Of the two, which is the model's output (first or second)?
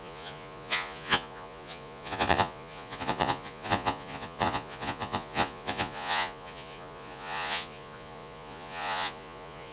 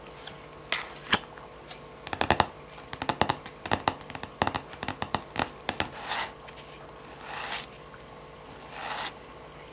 first